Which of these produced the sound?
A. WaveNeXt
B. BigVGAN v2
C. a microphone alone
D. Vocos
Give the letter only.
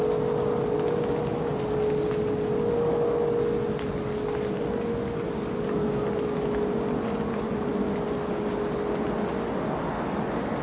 C